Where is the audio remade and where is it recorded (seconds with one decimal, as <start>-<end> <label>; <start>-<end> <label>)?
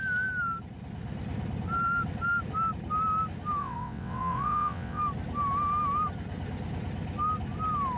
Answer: 0.0-3.6 recorded; 3.6-5.0 remade; 5.0-8.0 recorded